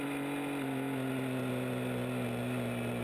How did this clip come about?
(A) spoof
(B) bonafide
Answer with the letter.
B